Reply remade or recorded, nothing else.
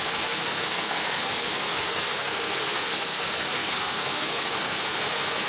remade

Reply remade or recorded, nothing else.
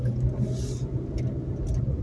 recorded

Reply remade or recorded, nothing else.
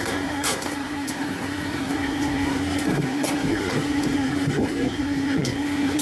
remade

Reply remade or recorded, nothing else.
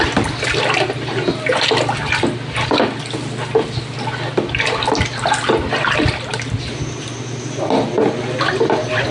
recorded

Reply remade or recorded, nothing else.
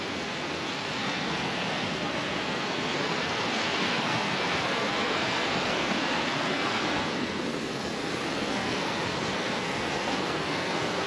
remade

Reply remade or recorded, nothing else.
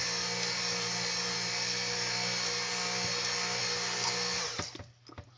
recorded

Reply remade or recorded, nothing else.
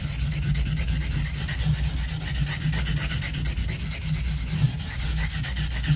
recorded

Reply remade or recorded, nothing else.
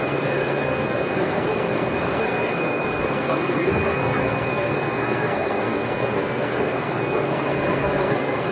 remade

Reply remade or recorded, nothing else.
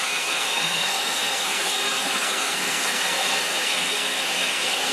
remade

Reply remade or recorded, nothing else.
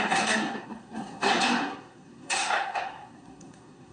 remade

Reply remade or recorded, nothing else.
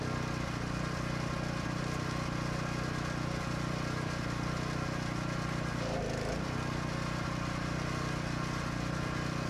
recorded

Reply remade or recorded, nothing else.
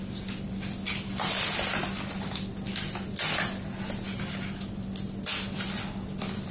recorded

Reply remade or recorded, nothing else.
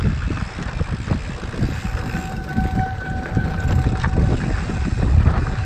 recorded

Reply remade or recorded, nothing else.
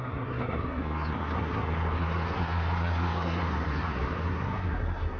remade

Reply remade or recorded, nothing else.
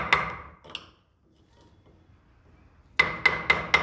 recorded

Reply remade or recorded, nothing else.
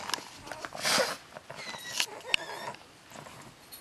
recorded